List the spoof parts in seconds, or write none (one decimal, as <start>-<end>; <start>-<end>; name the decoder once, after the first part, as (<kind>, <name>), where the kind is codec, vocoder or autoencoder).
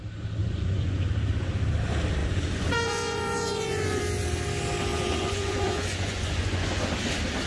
0.4-1.1 (vocoder, Vocos); 2.2-4.0; 4.9-6.9